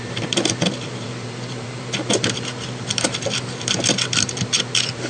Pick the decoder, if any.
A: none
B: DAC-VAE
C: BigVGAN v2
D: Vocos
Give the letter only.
C